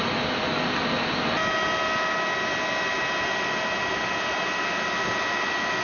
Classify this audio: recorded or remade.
recorded